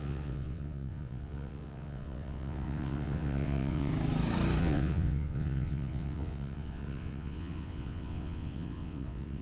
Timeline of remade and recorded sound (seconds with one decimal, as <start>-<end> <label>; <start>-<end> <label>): 0.0-3.9 remade; 3.9-4.6 recorded; 4.6-9.4 remade